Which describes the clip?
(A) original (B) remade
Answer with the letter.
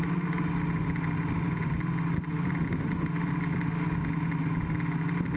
A